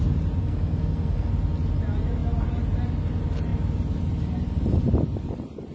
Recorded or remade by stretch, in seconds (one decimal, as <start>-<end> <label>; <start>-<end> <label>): 0.0-0.4 recorded; 0.4-1.3 remade; 1.3-5.7 recorded